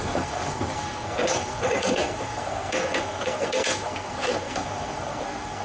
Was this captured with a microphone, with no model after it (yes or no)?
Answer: no